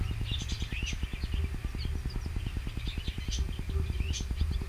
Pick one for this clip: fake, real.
real